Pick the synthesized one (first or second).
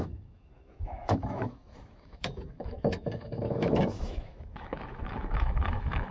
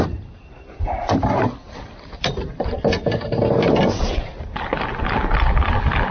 first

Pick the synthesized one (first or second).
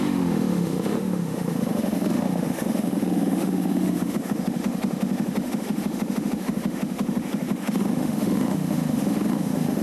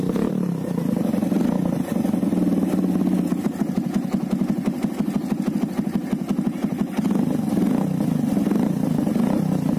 first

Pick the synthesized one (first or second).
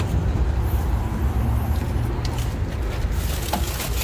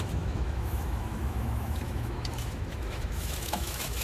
second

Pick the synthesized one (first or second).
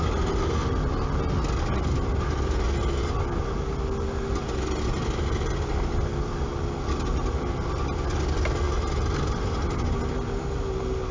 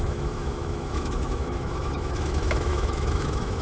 second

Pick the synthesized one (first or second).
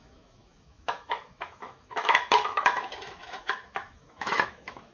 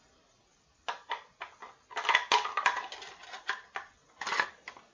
first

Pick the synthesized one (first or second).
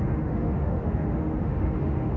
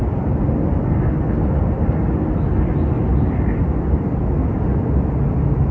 first